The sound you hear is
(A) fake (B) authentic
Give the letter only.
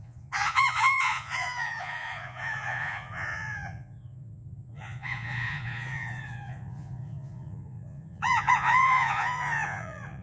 A